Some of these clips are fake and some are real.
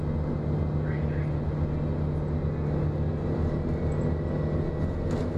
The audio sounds real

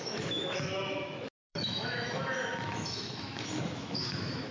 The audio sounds fake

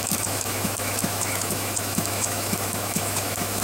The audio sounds fake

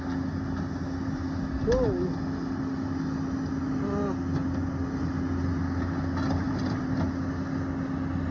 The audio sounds real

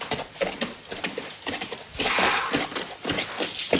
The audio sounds real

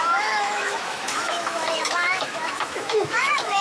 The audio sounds fake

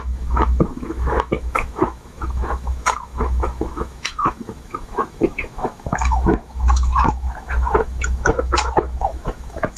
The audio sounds fake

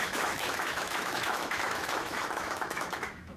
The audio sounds fake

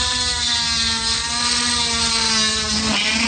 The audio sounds real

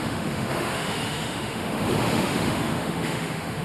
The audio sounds fake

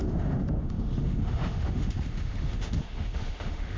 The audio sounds fake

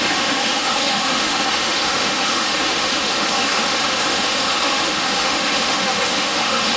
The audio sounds fake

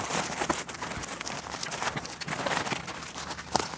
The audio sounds real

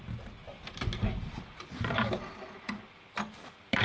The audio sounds real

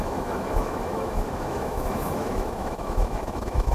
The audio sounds fake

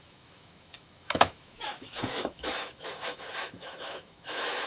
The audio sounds fake